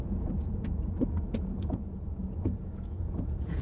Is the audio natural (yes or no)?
no